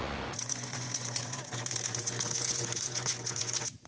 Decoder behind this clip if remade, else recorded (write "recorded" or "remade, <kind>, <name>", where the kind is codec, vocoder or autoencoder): remade, vocoder, Vocos